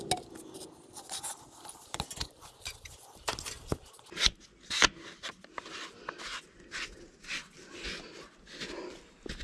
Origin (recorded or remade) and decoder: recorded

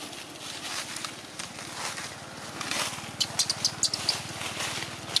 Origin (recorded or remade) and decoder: recorded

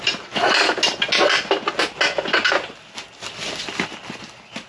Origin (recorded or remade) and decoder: recorded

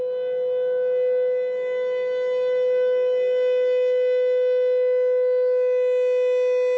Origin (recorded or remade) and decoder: recorded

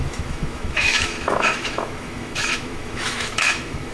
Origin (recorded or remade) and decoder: remade, autoencoder, DAC-VAE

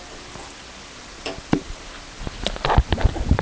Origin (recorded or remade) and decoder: recorded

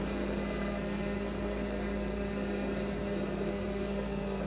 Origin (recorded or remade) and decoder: remade, codec, SNAC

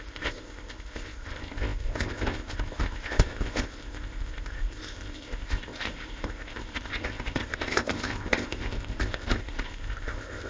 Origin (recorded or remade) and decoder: remade, codec, ZipCodec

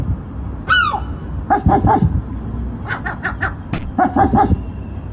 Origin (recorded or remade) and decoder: recorded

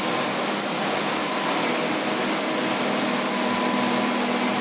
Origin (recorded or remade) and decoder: recorded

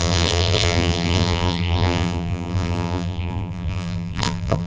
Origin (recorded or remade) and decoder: remade, vocoder, BigVGAN v2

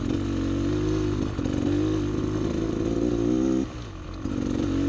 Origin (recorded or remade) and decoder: recorded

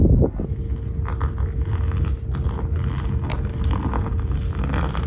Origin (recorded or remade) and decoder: recorded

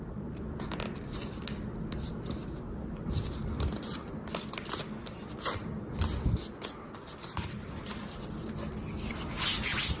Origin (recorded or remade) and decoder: recorded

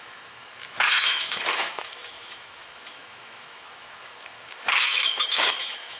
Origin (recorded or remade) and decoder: remade, autoencoder, DAC-VAE